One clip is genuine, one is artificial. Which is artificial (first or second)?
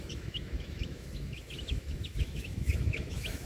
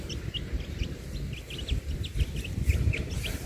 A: first